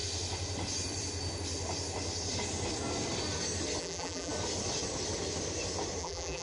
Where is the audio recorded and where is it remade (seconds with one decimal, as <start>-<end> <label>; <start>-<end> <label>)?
0.0-3.8 recorded; 3.8-4.3 remade; 4.3-6.0 recorded; 6.0-6.4 remade